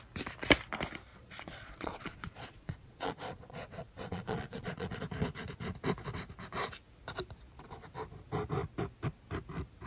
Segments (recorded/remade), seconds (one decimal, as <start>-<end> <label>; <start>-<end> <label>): 0.0-1.1 recorded; 1.1-5.0 remade; 5.0-9.9 recorded